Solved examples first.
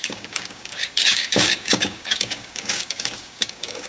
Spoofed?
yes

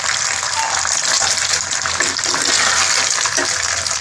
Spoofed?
no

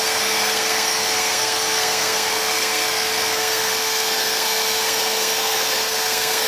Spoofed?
yes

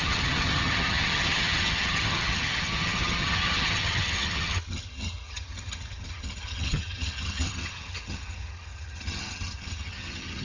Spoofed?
yes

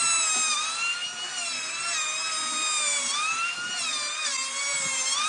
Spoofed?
yes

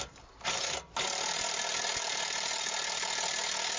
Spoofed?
no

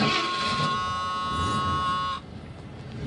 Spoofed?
no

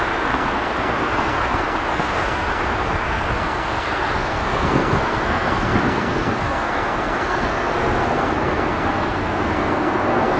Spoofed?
yes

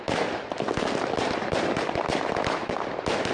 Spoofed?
no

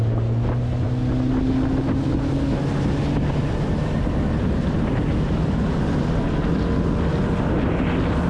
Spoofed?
no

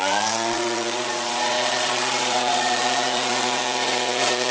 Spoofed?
yes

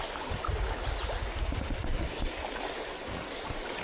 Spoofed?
no